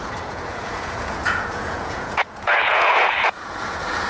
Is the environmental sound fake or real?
fake